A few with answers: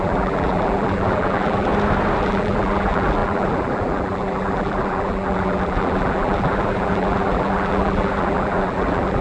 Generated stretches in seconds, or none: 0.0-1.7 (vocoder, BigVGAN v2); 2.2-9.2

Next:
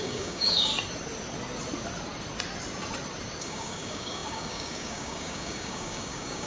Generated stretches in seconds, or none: 0.0-0.7 (codec, DAC); 3.4-6.5

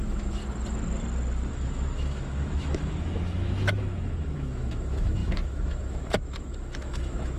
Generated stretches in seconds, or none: 0.0-0.4 (autoencoder, DAC-VAE); 1.5-7.4